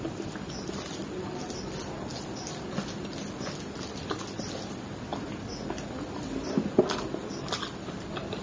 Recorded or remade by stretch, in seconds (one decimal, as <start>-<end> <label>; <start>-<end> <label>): 0.0-8.4 recorded